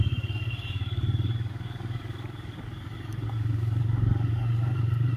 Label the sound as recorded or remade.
remade